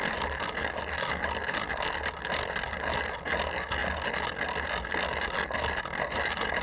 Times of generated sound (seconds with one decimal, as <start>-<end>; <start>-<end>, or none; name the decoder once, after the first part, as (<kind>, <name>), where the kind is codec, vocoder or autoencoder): none

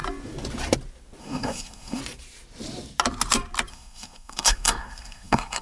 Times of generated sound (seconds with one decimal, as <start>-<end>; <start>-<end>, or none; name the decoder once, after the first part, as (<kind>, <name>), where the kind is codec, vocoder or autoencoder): 1.2-2.0 (codec, SNAC); 3.7-5.6

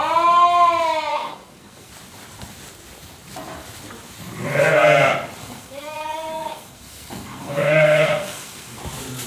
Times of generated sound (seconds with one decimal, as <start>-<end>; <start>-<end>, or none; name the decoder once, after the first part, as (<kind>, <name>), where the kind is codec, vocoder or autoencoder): 1.1-1.9 (codec, SNAC); 5.4-8.8

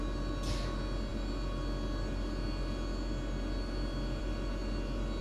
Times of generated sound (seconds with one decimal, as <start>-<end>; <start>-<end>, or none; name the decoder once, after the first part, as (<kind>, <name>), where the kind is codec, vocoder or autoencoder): none